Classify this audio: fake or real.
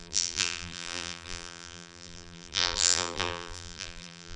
fake